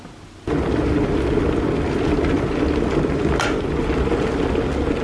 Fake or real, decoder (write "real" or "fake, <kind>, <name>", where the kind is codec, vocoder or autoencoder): real